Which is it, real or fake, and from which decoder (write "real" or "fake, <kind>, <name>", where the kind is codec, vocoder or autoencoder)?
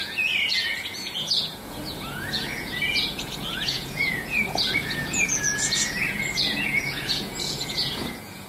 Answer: fake, vocoder, Vocos